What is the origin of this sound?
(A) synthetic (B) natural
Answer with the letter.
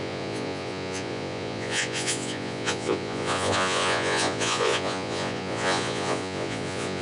A